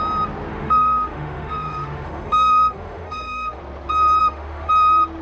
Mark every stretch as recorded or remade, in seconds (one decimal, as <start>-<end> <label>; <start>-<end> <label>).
0.0-0.5 recorded; 0.5-3.6 remade; 3.6-4.2 recorded; 4.2-4.7 remade; 4.7-5.2 recorded